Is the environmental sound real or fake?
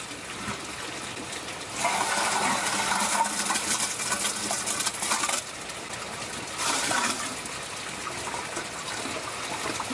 real